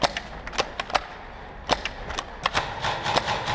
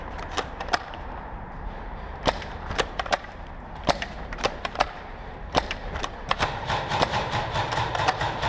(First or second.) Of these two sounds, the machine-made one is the second